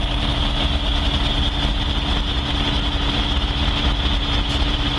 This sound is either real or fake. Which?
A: real